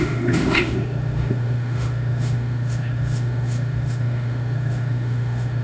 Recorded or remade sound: remade